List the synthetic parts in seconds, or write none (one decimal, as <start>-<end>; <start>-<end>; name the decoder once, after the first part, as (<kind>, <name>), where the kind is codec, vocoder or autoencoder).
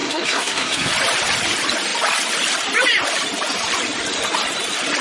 0.0-0.9 (codec, SNAC)